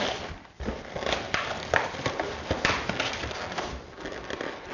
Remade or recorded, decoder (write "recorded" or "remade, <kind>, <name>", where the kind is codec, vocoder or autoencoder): recorded